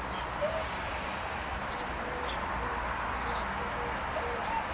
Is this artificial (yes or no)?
no